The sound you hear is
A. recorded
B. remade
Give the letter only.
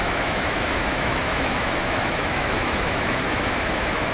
B